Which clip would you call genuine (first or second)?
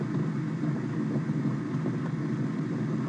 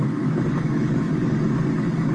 first